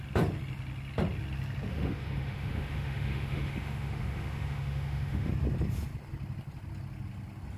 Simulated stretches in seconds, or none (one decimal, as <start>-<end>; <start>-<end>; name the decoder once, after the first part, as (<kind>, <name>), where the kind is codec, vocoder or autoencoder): 1.7-5.3 (autoencoder, DAC-VAE)